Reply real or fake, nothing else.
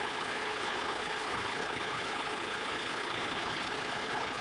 fake